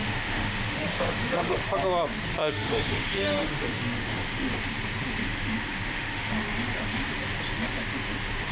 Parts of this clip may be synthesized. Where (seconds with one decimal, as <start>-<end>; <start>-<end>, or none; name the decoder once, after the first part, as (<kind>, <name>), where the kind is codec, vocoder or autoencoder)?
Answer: 0.0-1.6 (autoencoder, DAC-VAE); 2.4-4.5; 5.2-6.3